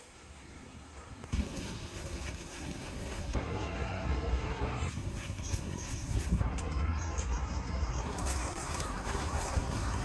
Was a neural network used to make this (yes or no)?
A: yes